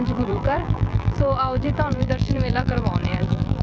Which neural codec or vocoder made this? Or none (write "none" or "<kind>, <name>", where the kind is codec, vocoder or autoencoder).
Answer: vocoder, BigVGAN v2